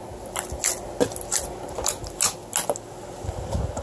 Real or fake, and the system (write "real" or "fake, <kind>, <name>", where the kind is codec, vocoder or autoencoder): real